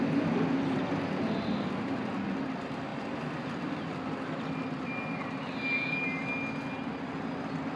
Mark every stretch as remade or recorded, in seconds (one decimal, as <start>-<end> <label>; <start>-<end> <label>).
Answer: 0.0-7.8 recorded